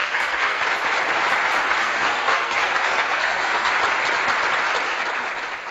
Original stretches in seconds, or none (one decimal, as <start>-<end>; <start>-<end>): 0.6-1.8; 3.7-5.7